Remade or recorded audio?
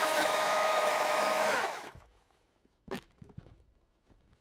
remade